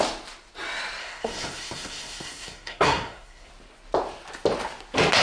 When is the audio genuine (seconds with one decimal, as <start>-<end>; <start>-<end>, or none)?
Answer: 0.0-1.0; 3.5-5.2